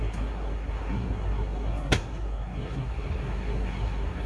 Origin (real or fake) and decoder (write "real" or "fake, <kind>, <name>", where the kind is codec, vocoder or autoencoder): fake, codec, SNAC